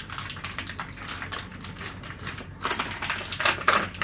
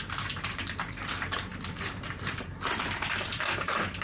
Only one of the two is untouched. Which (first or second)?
first